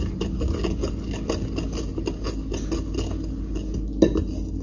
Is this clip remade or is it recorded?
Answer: recorded